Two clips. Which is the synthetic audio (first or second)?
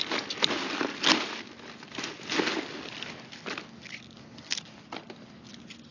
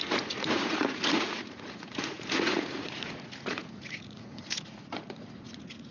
second